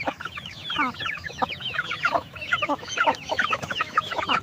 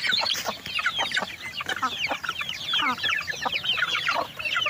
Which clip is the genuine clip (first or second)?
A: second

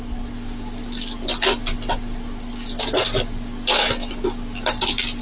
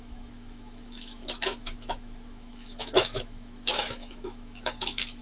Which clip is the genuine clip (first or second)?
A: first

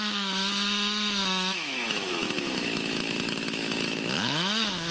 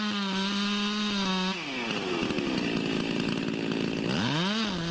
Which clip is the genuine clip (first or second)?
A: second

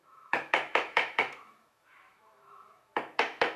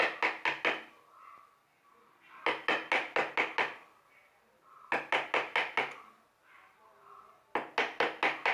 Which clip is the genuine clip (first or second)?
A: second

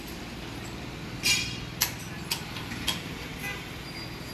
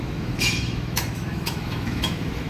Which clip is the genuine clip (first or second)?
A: first